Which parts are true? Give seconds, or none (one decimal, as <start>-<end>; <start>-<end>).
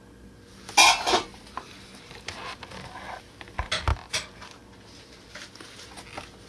0.0-6.5